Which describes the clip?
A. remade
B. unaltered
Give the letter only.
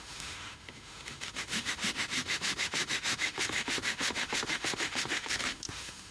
A